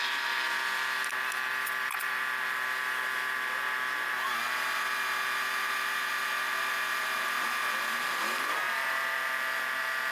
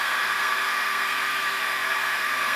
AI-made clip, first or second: second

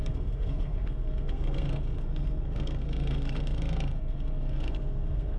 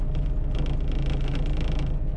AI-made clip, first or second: first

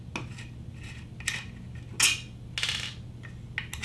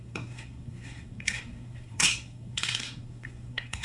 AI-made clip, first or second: second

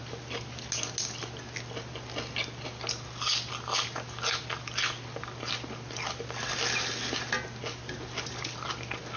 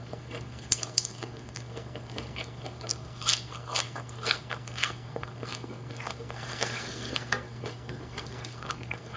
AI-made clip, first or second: second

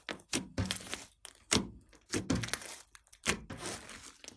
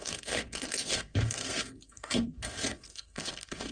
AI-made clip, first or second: second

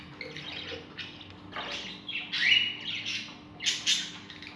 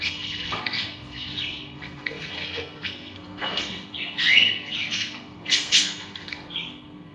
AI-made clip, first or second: second